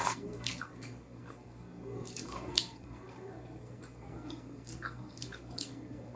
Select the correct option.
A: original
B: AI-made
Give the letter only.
B